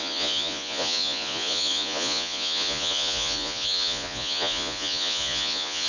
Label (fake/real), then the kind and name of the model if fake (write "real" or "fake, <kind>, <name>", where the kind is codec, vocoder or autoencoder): fake, vocoder, Vocos